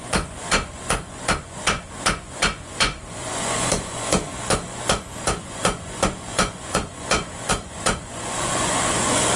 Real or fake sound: fake